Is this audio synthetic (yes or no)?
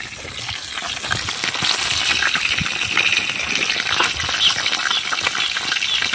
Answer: no